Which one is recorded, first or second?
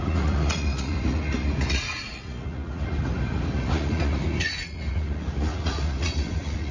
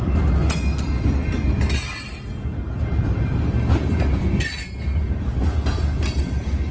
second